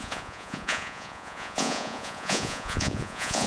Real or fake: fake